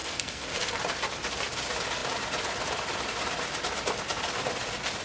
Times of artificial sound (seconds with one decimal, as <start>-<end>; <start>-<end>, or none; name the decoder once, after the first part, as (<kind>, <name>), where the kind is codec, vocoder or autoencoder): 0.0-0.8 (codec, SNAC)